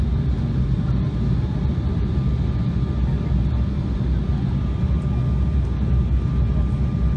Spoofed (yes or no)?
no